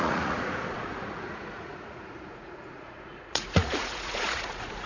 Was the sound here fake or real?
fake